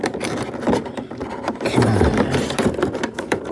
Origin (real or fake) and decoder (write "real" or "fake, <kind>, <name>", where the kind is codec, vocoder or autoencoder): fake, vocoder, BigVGAN v2